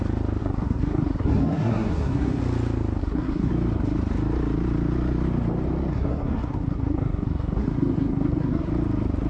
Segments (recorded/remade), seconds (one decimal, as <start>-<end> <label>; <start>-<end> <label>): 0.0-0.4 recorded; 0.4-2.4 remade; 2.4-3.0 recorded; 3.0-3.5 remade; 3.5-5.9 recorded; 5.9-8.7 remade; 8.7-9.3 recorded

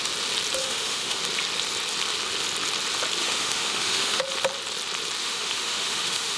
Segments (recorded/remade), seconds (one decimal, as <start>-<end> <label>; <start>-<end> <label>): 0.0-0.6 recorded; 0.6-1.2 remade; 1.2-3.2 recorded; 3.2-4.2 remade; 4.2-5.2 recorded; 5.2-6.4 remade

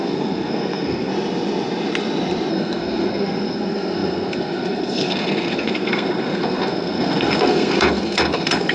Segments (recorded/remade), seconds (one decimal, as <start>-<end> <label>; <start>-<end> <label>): 0.0-1.1 remade; 1.1-2.5 recorded; 2.5-8.7 remade

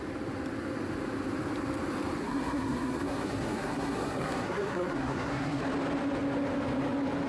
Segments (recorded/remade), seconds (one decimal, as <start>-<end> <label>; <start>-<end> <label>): 0.0-2.2 recorded; 2.2-5.6 remade; 5.6-7.3 recorded

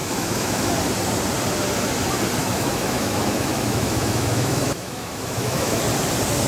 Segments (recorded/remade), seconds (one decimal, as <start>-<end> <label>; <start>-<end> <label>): 0.0-0.7 remade; 0.7-2.4 recorded; 2.4-5.8 remade; 5.8-6.5 recorded

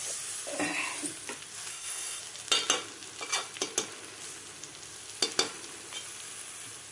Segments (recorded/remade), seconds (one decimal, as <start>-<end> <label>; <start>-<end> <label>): 0.0-1.7 recorded; 1.7-2.2 remade; 2.2-6.9 recorded

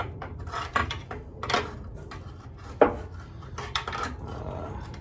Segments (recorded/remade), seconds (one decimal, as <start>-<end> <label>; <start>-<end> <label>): 0.0-1.2 remade; 1.2-5.0 recorded

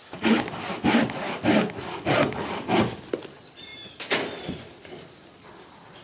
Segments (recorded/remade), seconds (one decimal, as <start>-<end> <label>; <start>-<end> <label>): 0.0-6.0 recorded